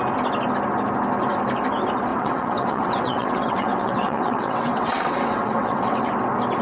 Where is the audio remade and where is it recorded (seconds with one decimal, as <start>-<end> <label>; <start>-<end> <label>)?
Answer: 0.0-2.1 recorded; 2.1-6.1 remade; 6.1-6.6 recorded